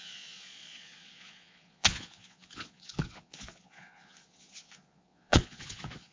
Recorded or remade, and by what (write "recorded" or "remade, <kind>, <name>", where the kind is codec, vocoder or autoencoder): remade, vocoder, Vocos